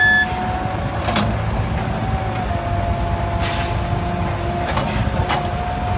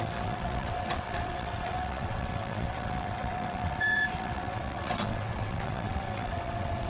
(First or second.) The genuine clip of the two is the first